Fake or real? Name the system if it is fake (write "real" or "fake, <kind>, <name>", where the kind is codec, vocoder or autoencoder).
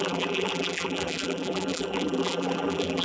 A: fake, vocoder, BigVGAN v2